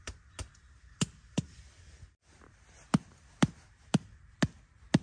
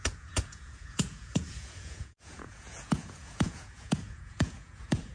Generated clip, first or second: second